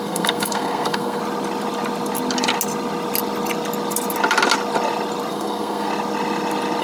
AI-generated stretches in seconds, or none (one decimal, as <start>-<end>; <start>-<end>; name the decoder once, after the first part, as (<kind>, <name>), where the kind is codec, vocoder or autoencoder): 0.0-1.2 (codec, SNAC); 5.3-5.9